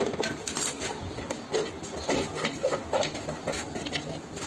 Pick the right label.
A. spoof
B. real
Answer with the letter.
B